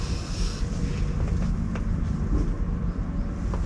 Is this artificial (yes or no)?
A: no